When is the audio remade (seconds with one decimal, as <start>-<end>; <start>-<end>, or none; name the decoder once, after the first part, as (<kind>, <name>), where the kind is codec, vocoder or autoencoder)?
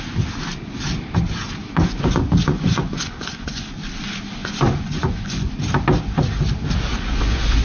1.6-3.7 (vocoder, Vocos); 4.4-5.5; 6.9-7.6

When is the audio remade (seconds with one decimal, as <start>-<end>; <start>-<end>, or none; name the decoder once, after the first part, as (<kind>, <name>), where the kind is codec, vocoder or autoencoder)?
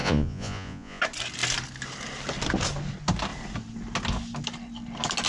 0.0-1.0 (vocoder, Vocos)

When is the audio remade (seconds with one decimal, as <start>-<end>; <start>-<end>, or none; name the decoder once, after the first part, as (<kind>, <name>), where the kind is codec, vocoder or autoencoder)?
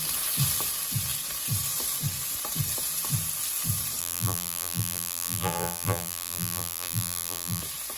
4.0-7.6 (vocoder, BigVGAN v2)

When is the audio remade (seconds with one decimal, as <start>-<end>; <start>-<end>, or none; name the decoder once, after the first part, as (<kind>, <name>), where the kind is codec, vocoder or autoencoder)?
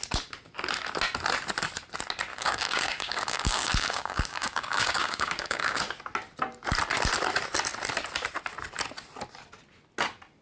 2.3-5.8 (codec, DAC)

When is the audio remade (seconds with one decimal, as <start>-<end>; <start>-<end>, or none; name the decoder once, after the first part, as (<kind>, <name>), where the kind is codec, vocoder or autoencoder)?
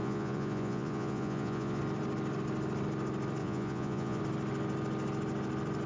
0.0-1.8 (vocoder, Vocos); 3.4-4.2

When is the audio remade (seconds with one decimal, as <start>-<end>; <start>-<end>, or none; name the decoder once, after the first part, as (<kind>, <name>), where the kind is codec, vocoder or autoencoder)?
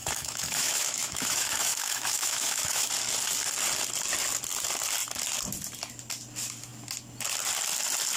0.0-2.9 (autoencoder, DAC-VAE)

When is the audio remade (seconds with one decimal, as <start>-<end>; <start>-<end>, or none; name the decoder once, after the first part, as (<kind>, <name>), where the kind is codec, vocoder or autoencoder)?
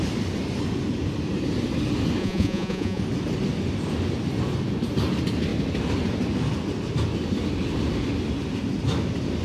2.2-3.0 (vocoder, Vocos)